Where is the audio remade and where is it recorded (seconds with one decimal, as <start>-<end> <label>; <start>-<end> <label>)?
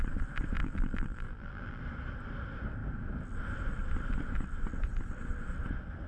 0.0-0.6 recorded; 0.6-1.8 remade; 1.8-6.1 recorded